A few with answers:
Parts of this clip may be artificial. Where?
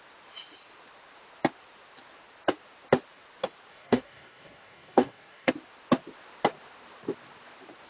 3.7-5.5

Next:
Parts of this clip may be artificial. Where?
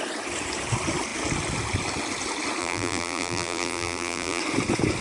2.6-4.4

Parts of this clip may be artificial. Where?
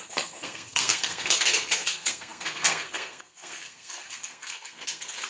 0.0-5.3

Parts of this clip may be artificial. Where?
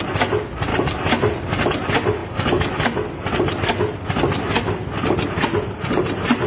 none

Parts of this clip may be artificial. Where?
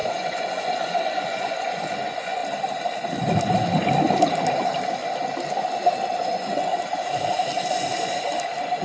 0.0-2.4; 6.2-6.7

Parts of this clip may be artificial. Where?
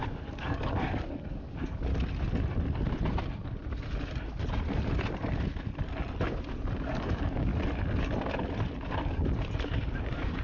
0.0-1.9; 6.8-7.5; 9.1-10.4